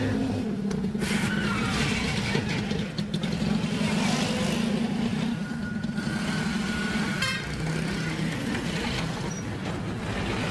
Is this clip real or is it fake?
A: real